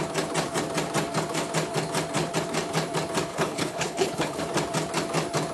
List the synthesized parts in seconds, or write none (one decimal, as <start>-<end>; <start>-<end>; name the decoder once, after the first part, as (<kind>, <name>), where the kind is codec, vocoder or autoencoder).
3.3-4.4 (codec, HILCodec)